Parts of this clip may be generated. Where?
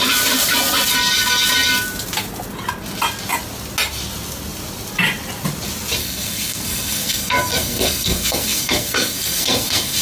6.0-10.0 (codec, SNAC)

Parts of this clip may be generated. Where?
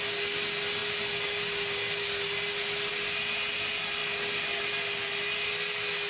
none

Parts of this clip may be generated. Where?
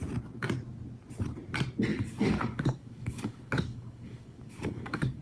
1.9-5.2 (codec, DAC)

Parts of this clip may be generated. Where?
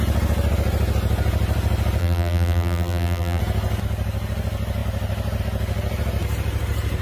2.0-3.4 (vocoder, BigVGAN v2)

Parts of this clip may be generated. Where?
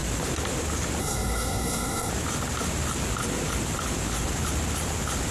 1.0-2.1 (codec, SNAC)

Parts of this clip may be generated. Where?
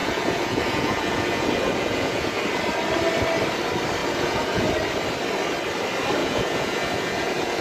0.0-2.4 (vocoder, Vocos); 4.0-4.6; 6.2-7.6